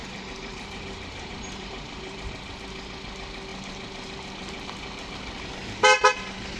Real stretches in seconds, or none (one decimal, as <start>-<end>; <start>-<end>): 2.3-6.6

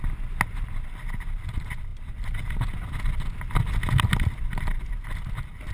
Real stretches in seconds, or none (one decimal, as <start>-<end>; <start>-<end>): 0.0-5.7

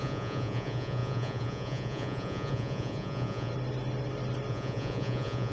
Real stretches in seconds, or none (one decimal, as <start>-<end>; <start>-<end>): 3.5-4.5